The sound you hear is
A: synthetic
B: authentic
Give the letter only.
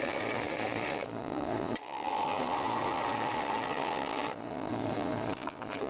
A